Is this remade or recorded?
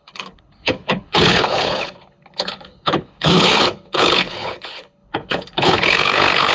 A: remade